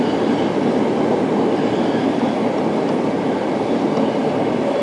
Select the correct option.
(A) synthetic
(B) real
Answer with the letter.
B